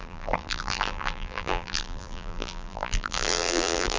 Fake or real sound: fake